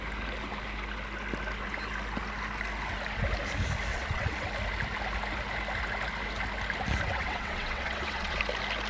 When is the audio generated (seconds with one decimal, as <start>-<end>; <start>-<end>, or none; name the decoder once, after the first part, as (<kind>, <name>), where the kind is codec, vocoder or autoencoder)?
3.9-4.5 (vocoder, WaveNeXt); 7.1-8.4